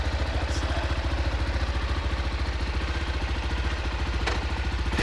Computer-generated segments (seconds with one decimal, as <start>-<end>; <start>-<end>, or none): none